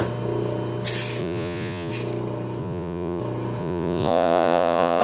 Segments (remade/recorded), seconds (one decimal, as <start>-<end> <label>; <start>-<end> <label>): 0.0-1.2 recorded; 1.2-1.9 remade; 1.9-2.6 recorded; 2.6-3.2 remade; 3.2-3.6 recorded; 3.6-5.0 remade